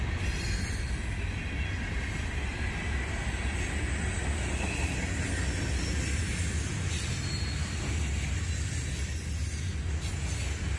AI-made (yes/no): no